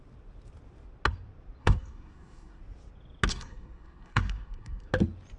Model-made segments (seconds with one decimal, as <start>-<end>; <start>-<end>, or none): 1.6-2.6; 3.3-4.9

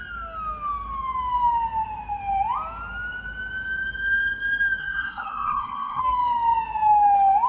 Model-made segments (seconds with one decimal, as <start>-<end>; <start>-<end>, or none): 4.8-6.0

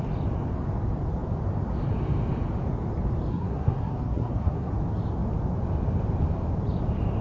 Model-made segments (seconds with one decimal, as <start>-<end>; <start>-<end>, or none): 3.3-4.7

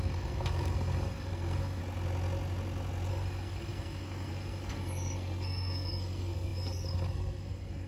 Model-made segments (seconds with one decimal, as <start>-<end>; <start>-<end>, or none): 0.0-1.8; 3.1-7.9

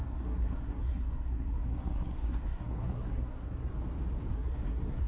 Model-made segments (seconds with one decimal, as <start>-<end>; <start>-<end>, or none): 0.0-3.7; 4.3-5.1